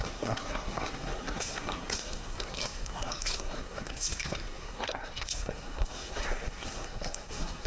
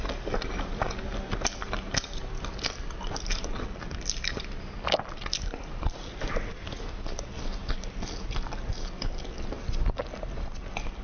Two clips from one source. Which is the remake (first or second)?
first